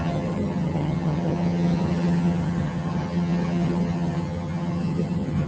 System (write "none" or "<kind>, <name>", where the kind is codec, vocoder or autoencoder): vocoder, HiFi-GAN